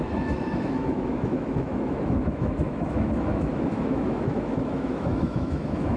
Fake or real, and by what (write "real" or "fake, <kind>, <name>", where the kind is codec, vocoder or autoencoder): fake, autoencoder, DAC-VAE